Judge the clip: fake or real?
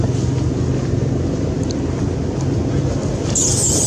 real